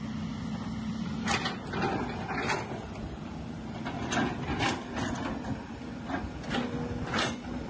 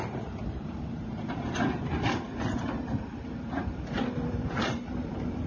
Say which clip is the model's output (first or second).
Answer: second